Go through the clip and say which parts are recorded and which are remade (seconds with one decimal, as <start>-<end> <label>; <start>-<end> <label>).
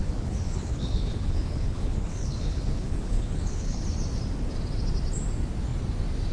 0.0-3.8 remade; 3.8-6.3 recorded